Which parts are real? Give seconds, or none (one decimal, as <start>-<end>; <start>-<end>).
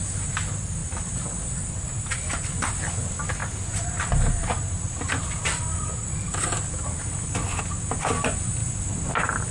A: 0.0-8.6; 9.1-9.5